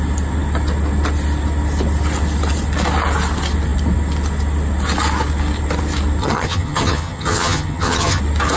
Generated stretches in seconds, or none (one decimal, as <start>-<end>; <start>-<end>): 6.2-8.2